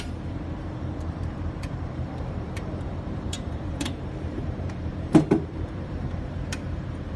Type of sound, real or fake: fake